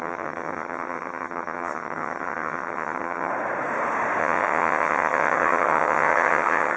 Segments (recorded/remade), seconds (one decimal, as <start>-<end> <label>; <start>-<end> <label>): 0.0-3.3 remade; 3.3-4.2 recorded; 4.2-6.8 remade